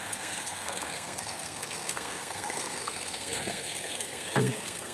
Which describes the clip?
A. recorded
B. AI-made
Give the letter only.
B